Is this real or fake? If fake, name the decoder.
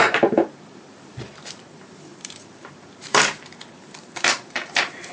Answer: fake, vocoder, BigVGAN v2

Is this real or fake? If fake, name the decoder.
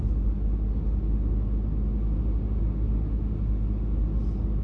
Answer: real